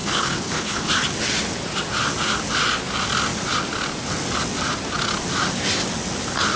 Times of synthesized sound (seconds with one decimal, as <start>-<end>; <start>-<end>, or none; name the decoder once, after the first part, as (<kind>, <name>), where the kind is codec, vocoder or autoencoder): 0.0-0.9 (codec, HILCodec)